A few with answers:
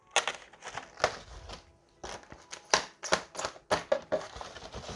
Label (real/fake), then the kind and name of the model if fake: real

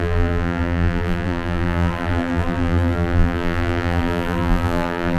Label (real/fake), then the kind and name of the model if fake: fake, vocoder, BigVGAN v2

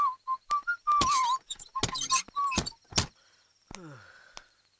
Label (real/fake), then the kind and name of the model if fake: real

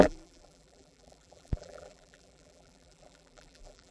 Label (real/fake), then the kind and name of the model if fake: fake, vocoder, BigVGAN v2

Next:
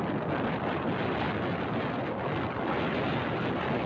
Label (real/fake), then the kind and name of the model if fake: real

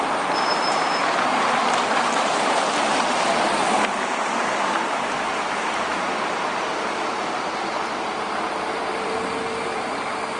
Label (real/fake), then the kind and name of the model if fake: fake, vocoder, BigVGAN v2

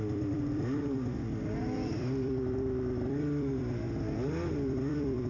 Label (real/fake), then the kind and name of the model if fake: fake, vocoder, BigVGAN v2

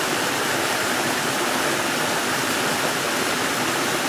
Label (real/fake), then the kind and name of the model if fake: fake, vocoder, BigVGAN v2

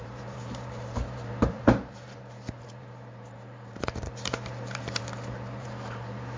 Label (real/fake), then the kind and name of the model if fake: fake, vocoder, BigVGAN v2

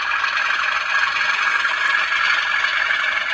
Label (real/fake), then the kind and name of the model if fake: real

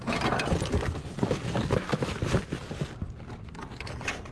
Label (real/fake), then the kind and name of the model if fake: fake, vocoder, BigVGAN v2